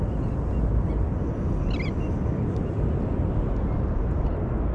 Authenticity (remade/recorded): recorded